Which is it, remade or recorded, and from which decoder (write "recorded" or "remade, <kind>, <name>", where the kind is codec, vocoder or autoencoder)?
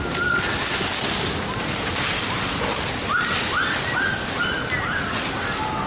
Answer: recorded